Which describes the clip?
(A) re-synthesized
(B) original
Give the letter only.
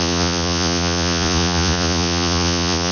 A